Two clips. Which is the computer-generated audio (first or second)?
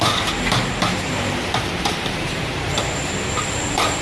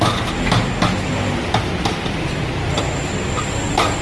first